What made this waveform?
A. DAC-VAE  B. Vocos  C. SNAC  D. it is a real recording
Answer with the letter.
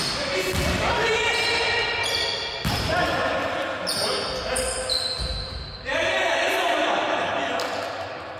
D